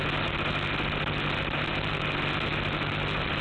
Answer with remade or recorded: recorded